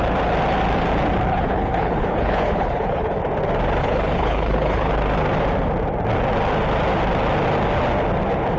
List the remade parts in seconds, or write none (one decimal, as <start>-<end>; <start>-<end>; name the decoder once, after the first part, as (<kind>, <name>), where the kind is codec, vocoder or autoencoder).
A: 1.3-3.2 (codec, HILCodec); 3.8-4.9